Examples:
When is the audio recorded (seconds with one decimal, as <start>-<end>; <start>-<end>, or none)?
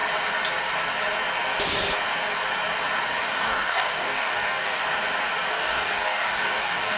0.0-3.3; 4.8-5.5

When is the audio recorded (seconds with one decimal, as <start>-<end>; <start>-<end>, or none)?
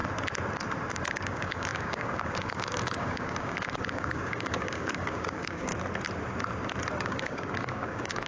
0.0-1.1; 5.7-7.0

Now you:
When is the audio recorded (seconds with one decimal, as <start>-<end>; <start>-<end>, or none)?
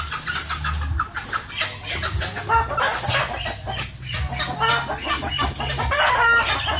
0.0-6.8